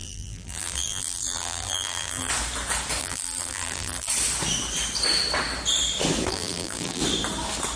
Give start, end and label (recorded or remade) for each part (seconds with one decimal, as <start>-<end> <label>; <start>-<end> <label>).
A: 0.0-2.3 remade; 2.3-3.0 recorded; 3.0-4.1 remade; 4.1-6.3 recorded; 6.3-7.0 remade; 7.0-7.8 recorded

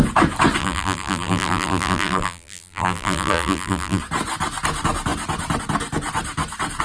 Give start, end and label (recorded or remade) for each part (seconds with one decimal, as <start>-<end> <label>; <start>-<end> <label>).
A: 0.0-0.6 recorded; 0.6-4.0 remade; 4.0-6.8 recorded